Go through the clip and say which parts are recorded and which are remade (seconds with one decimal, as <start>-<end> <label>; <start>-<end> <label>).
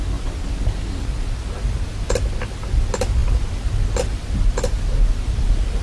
0.0-5.8 recorded